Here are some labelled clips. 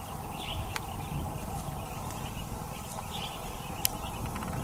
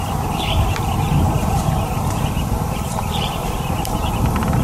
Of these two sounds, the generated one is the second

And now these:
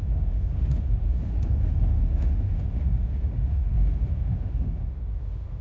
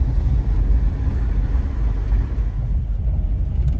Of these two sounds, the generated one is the first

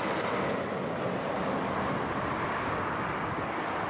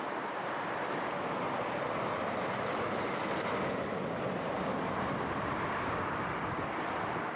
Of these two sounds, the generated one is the second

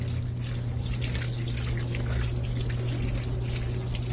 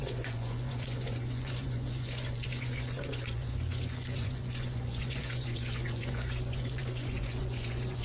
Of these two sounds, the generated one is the second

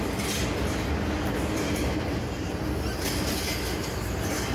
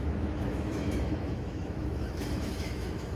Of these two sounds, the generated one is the second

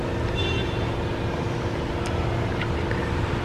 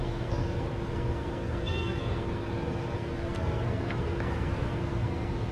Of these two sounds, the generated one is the second